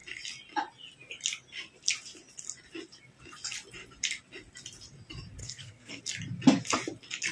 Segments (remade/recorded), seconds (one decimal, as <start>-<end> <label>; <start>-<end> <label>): 0.0-5.4 recorded; 5.4-6.0 remade; 6.0-7.3 recorded

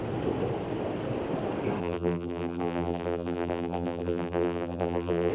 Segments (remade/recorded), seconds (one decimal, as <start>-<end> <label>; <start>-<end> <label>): 0.0-1.8 recorded; 1.8-5.3 remade

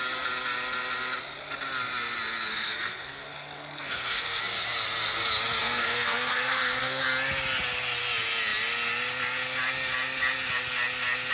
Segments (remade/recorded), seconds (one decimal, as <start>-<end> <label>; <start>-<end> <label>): 0.0-2.5 recorded; 2.5-4.4 remade; 4.4-5.6 recorded; 5.6-7.0 remade; 7.0-11.3 recorded

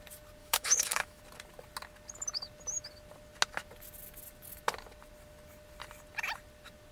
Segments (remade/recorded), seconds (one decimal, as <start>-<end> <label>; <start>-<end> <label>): 0.0-0.4 recorded; 0.4-1.2 remade; 1.2-6.9 recorded

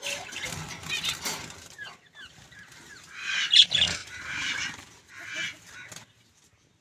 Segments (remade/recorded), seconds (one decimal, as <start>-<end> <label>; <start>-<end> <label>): 0.0-4.0 recorded; 4.0-5.1 remade; 5.1-6.8 recorded

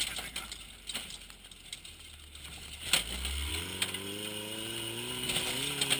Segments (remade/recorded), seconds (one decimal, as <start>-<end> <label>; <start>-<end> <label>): 0.0-6.0 recorded

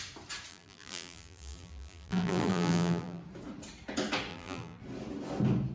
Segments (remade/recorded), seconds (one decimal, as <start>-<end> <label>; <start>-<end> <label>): 0.0-0.5 recorded; 0.5-3.2 remade; 3.2-4.3 recorded; 4.3-4.8 remade; 4.8-5.7 recorded